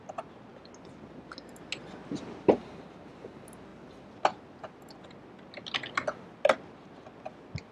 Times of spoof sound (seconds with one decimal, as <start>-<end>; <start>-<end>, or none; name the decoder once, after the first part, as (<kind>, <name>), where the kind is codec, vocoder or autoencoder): none